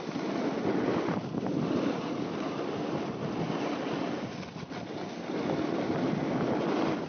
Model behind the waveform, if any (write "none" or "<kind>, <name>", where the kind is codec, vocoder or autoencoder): none